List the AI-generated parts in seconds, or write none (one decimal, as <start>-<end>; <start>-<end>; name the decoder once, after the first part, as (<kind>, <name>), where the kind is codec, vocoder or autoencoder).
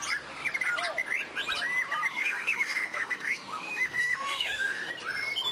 2.1-4.9 (autoencoder, DAC-VAE)